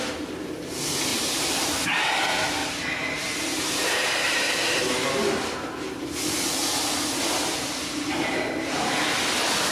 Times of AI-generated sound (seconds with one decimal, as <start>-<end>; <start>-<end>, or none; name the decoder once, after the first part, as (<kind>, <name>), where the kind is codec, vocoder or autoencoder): 1.1-2.1 (vocoder, BigVGAN v2); 2.6-4.6